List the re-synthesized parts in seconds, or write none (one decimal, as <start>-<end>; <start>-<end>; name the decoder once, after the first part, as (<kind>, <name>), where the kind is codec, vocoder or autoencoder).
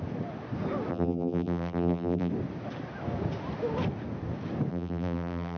0.9-2.3 (vocoder, BigVGAN v2); 4.7-5.6